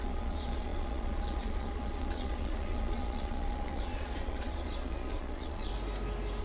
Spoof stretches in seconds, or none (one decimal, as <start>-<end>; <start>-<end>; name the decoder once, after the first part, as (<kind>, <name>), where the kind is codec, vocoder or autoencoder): 0.0-5.7 (vocoder, Vocos)

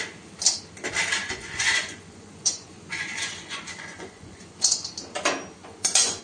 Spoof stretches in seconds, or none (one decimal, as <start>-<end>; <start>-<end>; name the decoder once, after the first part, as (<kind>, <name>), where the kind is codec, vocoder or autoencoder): 1.2-4.9 (vocoder, Vocos); 5.6-6.2